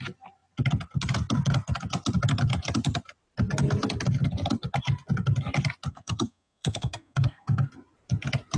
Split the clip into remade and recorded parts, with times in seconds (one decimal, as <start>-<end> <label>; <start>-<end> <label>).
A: 0.0-5.9 recorded; 5.9-7.7 remade; 7.7-8.6 recorded

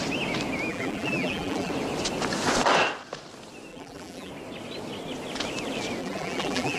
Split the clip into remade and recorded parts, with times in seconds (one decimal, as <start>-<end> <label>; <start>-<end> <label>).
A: 0.0-0.7 recorded; 0.7-1.7 remade; 1.7-3.7 recorded; 3.7-4.3 remade; 4.3-6.0 recorded; 6.0-6.8 remade